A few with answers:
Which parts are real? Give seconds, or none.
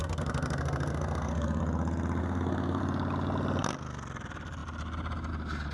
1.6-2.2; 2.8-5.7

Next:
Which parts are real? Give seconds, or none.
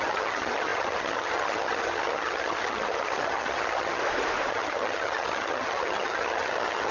4.0-4.5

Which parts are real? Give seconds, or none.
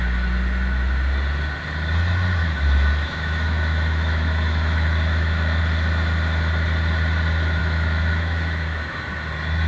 0.0-2.4; 5.6-7.6; 9.0-9.7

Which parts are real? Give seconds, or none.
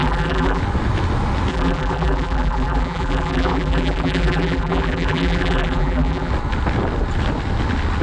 0.6-1.5; 6.3-8.0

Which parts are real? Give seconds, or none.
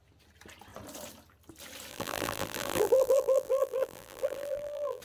0.0-1.9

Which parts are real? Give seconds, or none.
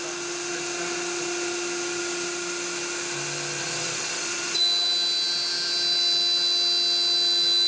0.0-3.6; 4.6-7.7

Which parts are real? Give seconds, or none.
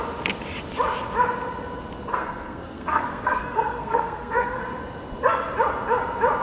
0.0-2.1; 4.6-6.4